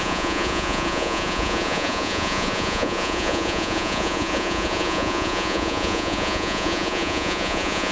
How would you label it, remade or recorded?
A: remade